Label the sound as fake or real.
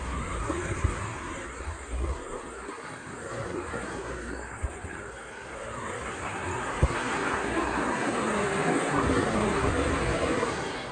fake